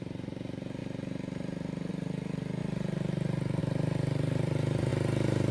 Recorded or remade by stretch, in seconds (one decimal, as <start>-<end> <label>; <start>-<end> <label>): 0.0-0.8 remade; 0.8-1.9 recorded; 1.9-4.9 remade; 4.9-5.5 recorded